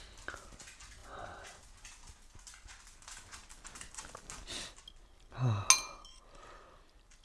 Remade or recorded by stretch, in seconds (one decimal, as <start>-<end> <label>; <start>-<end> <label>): 0.0-7.2 recorded